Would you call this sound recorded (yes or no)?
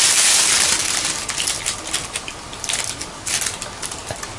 yes